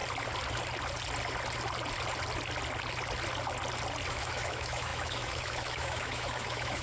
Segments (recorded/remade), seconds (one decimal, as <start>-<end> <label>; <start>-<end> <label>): 0.0-4.1 recorded; 4.1-6.8 remade

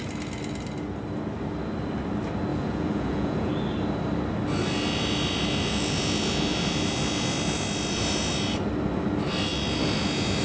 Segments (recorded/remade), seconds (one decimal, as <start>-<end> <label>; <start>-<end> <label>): 0.0-2.5 recorded; 2.5-3.5 remade; 3.5-10.4 recorded

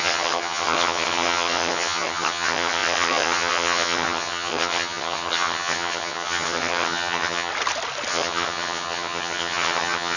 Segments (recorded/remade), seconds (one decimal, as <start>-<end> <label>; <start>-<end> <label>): 0.0-7.5 remade; 7.5-8.1 recorded; 8.1-10.2 remade

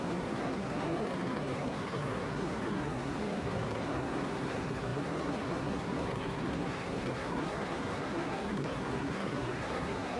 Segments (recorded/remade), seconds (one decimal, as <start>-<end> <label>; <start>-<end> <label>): 0.0-10.2 remade